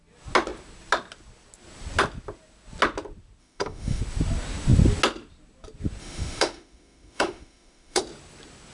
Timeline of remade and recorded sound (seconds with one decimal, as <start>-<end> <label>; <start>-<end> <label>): 0.0-3.4 recorded; 3.4-4.0 remade; 4.0-6.0 recorded; 6.0-8.0 remade; 8.0-8.7 recorded